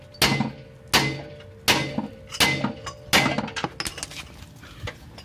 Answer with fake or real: real